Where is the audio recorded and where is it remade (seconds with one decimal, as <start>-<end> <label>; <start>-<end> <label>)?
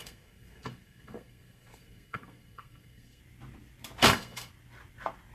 0.0-3.2 remade; 3.2-4.0 recorded; 4.0-4.5 remade; 4.5-5.3 recorded